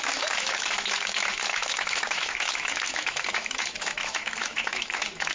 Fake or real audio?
fake